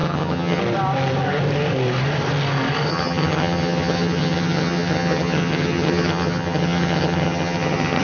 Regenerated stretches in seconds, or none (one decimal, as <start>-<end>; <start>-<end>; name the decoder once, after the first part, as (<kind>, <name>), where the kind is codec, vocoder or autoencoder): 0.0-0.6 (vocoder, HiFi-GAN); 2.9-8.0

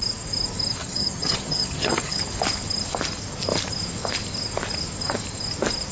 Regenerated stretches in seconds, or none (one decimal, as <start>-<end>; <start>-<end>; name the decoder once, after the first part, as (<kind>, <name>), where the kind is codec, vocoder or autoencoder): 0.8-2.2 (vocoder, HiFi-GAN)

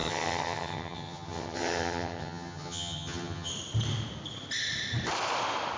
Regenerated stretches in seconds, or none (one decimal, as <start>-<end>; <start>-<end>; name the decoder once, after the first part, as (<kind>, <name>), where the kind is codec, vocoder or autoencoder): 0.0-3.5 (vocoder, HiFi-GAN)

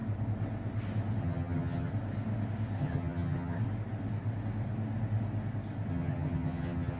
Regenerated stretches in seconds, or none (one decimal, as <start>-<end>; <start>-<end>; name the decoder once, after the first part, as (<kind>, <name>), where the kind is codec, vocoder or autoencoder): 1.2-1.9 (vocoder, HiFi-GAN); 2.8-3.6; 5.9-7.0

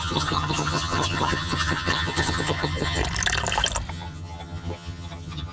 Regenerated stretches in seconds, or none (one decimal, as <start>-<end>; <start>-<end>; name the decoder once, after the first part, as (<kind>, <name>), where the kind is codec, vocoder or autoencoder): 0.0-3.0 (vocoder, HiFi-GAN); 3.9-5.5

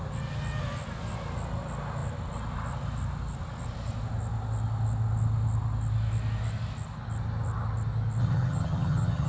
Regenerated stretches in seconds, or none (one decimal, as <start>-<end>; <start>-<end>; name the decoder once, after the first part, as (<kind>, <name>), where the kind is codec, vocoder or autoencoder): 8.2-9.3 (vocoder, HiFi-GAN)

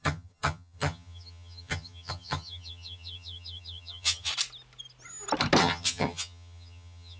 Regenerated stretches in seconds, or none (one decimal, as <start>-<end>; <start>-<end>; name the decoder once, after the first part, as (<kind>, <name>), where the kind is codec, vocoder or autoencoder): 0.0-4.3 (vocoder, HiFi-GAN); 5.6-7.2